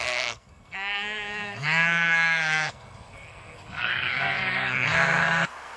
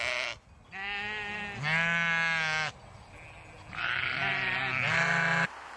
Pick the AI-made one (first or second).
first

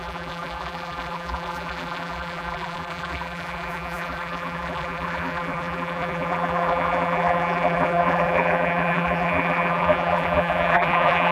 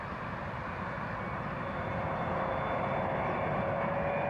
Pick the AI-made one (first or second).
first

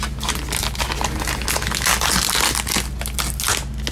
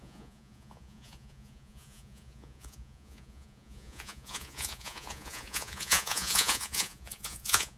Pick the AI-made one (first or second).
second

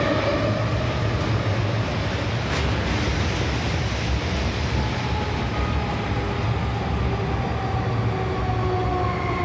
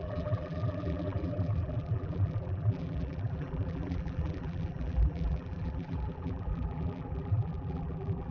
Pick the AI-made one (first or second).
second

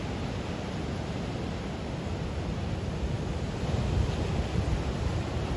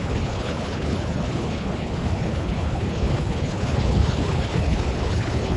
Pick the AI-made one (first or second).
second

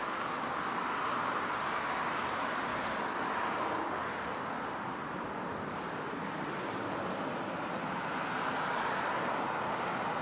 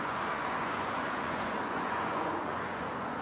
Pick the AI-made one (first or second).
second